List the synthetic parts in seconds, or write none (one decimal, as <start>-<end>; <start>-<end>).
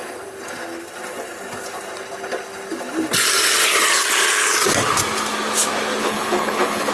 6.0-6.9